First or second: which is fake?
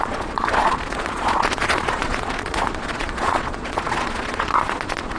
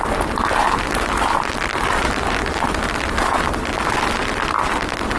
first